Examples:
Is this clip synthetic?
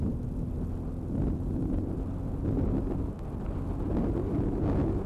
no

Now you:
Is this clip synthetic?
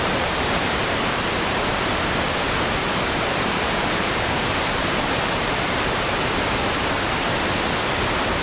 yes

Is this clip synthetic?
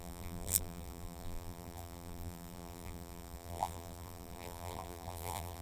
yes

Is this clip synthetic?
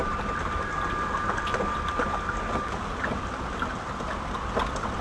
no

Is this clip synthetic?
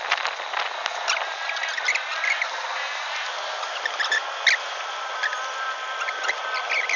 no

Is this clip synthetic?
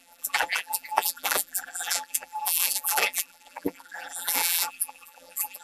yes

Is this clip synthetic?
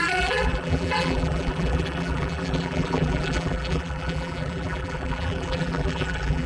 yes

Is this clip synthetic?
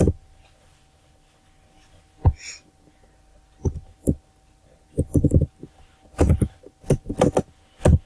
no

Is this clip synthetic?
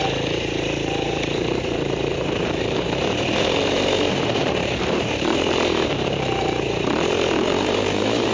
yes